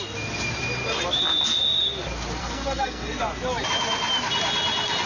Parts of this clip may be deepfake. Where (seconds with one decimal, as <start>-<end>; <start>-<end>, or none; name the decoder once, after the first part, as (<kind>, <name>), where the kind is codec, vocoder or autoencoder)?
2.4-3.2 (codec, SNAC)